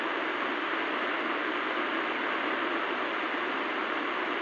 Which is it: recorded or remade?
recorded